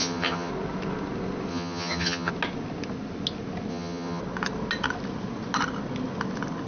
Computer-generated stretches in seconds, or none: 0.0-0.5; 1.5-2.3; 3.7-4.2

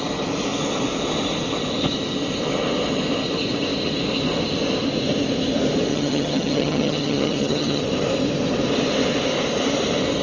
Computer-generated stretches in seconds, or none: 5.9-7.8

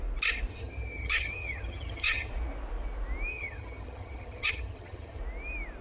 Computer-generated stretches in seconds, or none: 0.5-2.3; 3.3-5.2

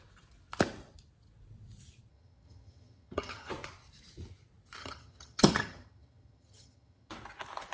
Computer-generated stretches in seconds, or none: 2.1-3.5; 4.8-7.1

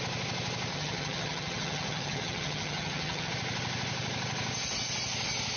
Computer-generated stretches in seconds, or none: 0.7-3.3

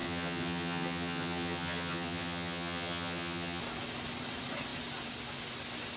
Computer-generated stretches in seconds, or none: 0.0-3.6

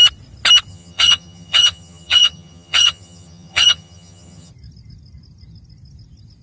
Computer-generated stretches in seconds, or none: 0.7-4.5